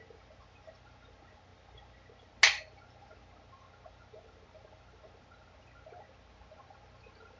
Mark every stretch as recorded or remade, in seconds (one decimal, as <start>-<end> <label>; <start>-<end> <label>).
0.0-7.4 recorded